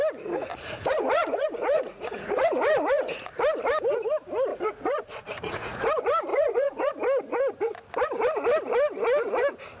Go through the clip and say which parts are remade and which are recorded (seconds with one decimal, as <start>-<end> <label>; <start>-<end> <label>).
0.0-0.5 recorded; 0.5-3.3 remade; 3.3-4.5 recorded; 4.5-5.8 remade; 5.8-6.3 recorded; 6.3-6.9 remade; 6.9-9.8 recorded